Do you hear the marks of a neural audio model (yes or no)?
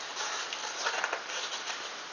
no